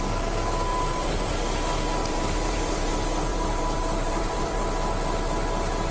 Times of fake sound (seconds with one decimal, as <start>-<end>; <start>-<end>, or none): 0.7-1.3; 2.0-2.9; 3.3-4.6